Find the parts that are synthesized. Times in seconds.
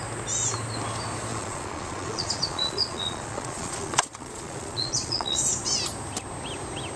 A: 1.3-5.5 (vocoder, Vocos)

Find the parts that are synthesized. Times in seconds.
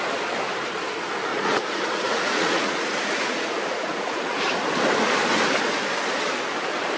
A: 1.3-4.4 (vocoder, Vocos)